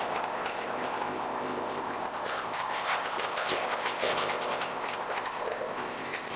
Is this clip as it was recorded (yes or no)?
no